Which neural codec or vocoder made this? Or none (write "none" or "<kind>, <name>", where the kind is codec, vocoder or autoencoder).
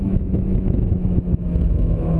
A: autoencoder, DAC-VAE